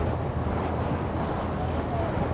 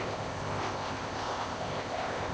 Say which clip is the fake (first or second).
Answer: second